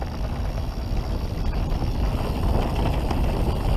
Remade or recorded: recorded